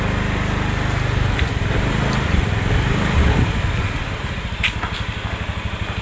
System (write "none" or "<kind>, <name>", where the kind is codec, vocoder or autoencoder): none